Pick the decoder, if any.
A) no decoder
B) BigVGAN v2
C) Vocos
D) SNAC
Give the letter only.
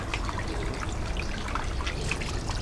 A